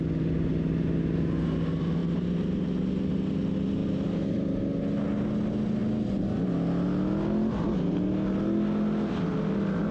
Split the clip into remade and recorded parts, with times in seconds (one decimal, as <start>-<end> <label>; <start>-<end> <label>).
0.0-2.0 recorded; 2.0-3.1 remade; 3.1-3.8 recorded; 3.8-4.6 remade; 4.6-9.9 recorded